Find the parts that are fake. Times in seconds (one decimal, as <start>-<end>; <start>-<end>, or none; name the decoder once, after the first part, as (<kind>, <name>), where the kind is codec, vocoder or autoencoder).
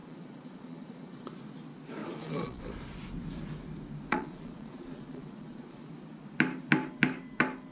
0.0-1.4 (vocoder, Vocos); 2.0-2.6; 4.1-5.9